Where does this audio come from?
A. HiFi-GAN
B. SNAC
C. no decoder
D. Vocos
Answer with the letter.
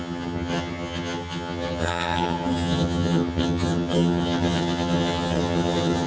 A